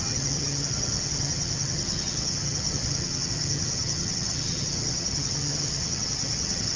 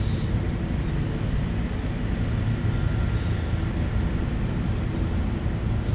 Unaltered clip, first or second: second